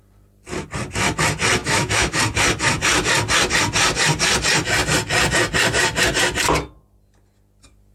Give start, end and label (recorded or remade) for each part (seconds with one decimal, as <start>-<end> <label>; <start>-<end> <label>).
0.0-1.6 recorded; 1.6-2.2 remade; 2.2-7.9 recorded